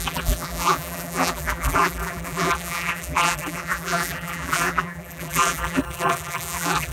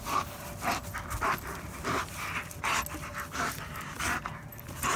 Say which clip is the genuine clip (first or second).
second